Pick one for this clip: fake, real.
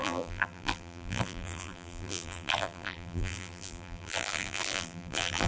fake